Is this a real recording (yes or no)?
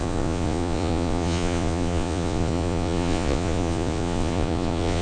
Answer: no